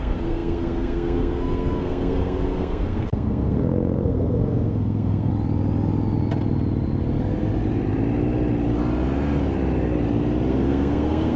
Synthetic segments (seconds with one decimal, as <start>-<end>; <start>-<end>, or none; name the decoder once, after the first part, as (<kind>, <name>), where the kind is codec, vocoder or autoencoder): 0.0-5.3 (codec, SNAC); 10.5-11.4